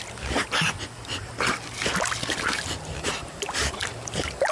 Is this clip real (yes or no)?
yes